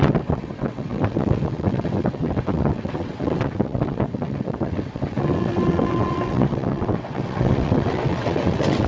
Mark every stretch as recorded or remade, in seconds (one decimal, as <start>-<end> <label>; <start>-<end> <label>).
0.0-8.9 remade